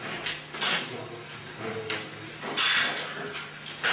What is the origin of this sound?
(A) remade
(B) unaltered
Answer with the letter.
B